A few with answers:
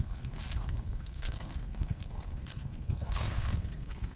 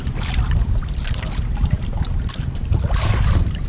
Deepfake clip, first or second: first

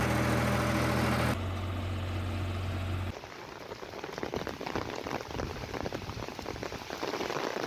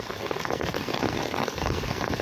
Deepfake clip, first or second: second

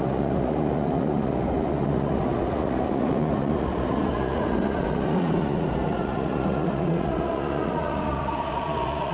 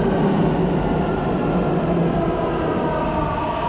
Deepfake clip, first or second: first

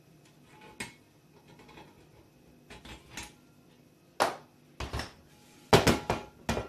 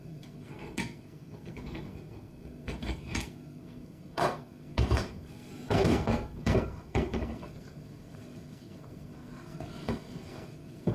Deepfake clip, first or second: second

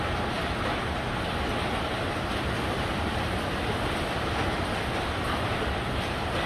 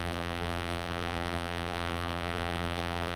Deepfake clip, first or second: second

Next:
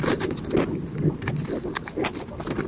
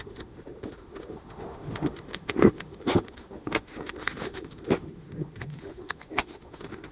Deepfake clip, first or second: second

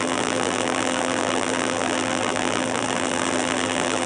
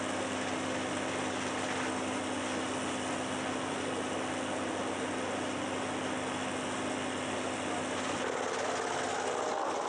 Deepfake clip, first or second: first